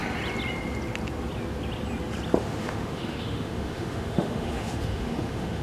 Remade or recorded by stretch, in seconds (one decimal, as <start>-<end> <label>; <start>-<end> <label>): 0.0-2.4 recorded; 2.4-5.6 remade